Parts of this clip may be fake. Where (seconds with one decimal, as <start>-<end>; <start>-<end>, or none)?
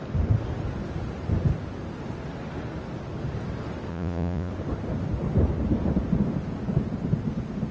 3.9-4.5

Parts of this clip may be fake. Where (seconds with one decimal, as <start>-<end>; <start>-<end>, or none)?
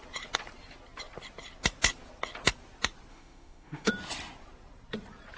3.1-3.9